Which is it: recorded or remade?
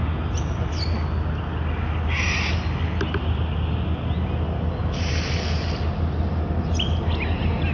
recorded